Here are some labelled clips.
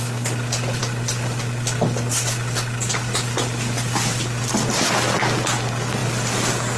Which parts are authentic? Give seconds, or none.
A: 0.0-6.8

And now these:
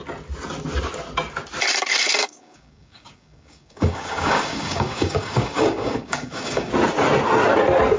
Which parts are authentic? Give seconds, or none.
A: 0.0-2.2; 6.7-8.0

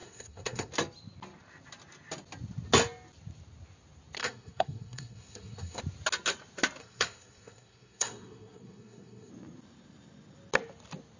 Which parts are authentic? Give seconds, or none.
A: 0.7-4.2; 5.8-6.8; 9.3-11.2